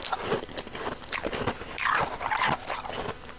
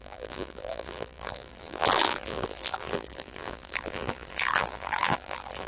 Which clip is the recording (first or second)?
first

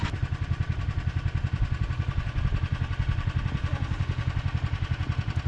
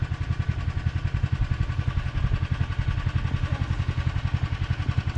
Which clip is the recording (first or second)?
second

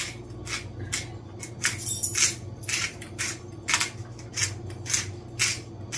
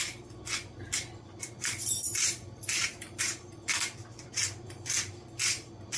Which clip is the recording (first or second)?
first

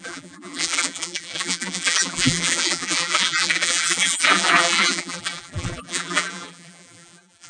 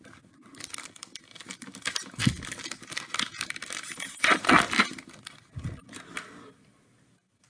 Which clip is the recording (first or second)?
second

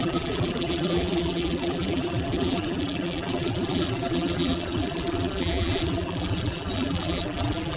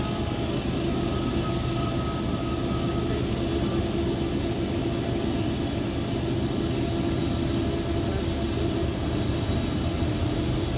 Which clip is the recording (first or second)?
second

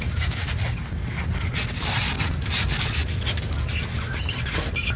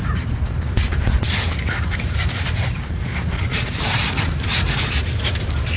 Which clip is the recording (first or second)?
first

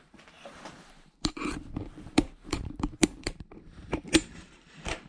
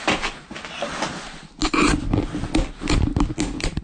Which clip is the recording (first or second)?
second